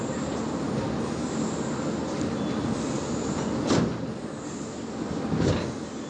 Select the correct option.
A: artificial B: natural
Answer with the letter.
B